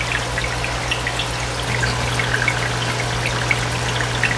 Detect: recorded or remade recorded